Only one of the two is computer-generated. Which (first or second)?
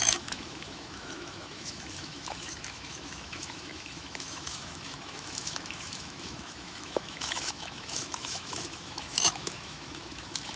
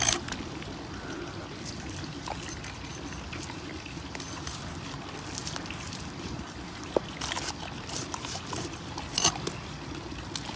first